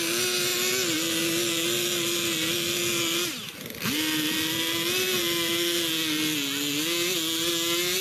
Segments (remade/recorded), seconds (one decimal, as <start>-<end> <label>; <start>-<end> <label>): 0.0-8.0 recorded

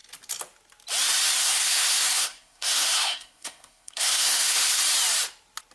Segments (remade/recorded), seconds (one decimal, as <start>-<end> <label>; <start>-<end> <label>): 0.0-1.4 recorded; 1.4-4.8 remade; 4.8-5.7 recorded

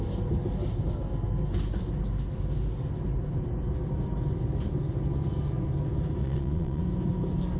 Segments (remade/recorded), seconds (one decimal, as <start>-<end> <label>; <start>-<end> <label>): 0.0-6.2 recorded; 6.2-6.8 remade; 6.8-7.6 recorded

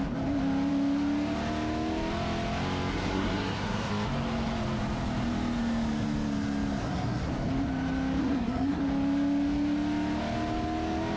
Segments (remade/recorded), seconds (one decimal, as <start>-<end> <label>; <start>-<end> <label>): 0.0-2.9 recorded; 2.9-3.9 remade; 3.9-6.8 recorded; 6.8-7.3 remade; 7.3-8.2 recorded; 8.2-8.8 remade; 8.8-11.2 recorded

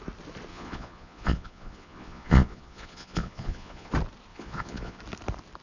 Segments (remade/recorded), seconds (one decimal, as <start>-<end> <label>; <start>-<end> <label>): 0.0-0.5 recorded; 0.5-3.9 remade; 3.9-4.3 recorded; 4.3-5.0 remade; 5.0-5.6 recorded

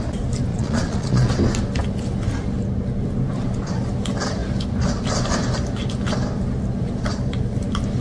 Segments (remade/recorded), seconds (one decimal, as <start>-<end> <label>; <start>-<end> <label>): 0.0-0.5 recorded; 0.5-1.3 remade; 1.3-8.0 recorded

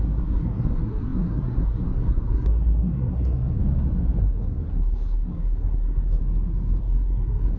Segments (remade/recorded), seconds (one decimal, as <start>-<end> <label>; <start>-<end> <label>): 0.0-3.6 remade; 3.6-4.2 recorded; 4.2-6.2 remade; 6.2-6.8 recorded; 6.8-7.6 remade